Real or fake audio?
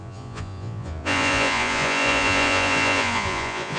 fake